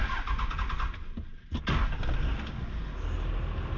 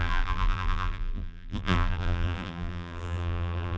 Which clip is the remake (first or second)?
second